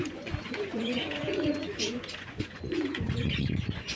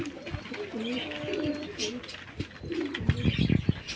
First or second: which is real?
second